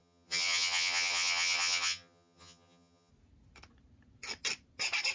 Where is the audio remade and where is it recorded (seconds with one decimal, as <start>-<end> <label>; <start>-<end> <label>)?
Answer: 0.0-3.1 remade; 3.1-5.1 recorded